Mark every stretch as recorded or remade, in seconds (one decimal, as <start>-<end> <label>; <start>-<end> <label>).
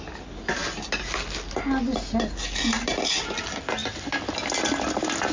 0.0-5.3 recorded